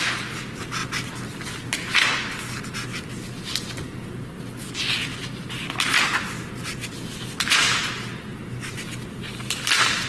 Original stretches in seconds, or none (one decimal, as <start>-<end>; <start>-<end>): 0.0-10.1